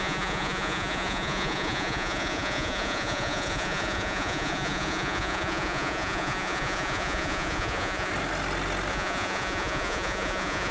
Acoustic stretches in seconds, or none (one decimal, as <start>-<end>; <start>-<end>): 8.1-8.9